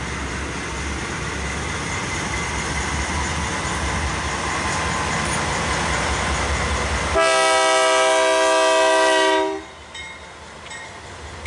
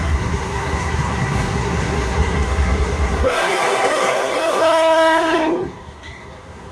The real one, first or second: first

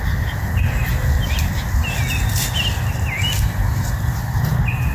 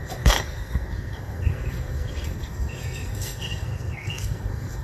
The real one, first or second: first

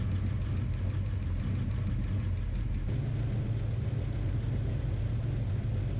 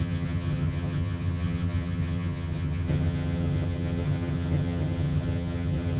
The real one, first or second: first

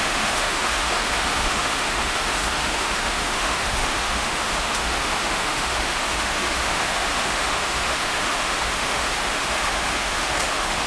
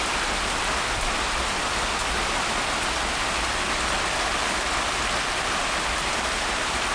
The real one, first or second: second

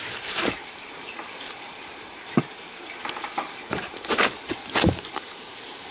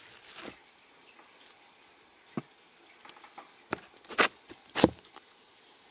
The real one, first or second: second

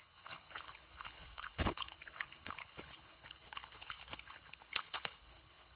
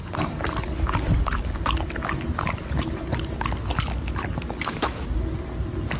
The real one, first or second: second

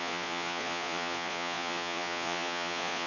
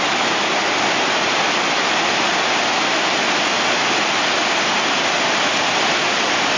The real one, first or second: second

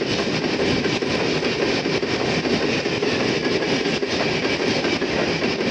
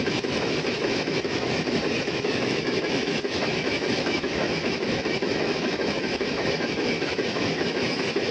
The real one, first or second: first